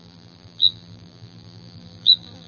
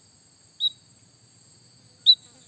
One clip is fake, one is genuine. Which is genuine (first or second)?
second